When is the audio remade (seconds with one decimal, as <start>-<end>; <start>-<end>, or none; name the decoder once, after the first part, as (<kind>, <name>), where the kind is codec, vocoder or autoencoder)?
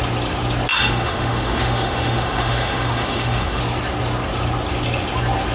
0.7-3.6 (autoencoder, DAC-VAE)